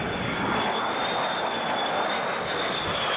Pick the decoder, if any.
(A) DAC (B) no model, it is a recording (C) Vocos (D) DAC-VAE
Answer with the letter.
B